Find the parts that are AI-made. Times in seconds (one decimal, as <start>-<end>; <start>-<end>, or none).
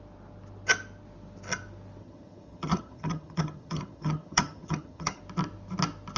2.0-5.2